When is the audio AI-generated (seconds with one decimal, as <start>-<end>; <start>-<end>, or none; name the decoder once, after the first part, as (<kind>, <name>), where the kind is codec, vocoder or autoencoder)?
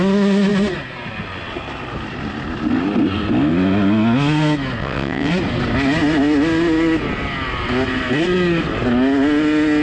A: 4.8-5.3 (vocoder, WaveNeXt)